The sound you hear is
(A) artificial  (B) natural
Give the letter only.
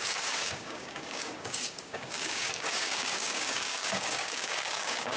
A